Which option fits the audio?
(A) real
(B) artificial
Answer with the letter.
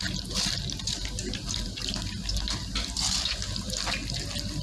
A